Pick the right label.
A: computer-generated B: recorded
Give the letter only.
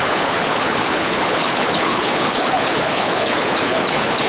A